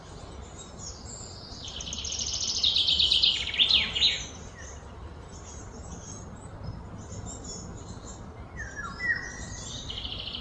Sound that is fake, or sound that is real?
real